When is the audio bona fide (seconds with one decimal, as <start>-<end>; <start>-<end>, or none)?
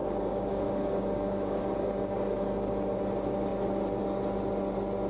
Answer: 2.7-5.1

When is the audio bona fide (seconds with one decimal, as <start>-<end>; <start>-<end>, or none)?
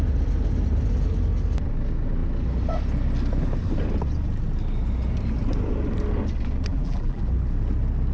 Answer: 0.0-6.7; 7.2-8.1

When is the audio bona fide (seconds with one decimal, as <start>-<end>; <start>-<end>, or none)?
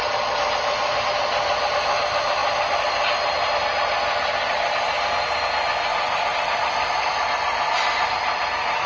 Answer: 0.0-5.9; 6.4-8.9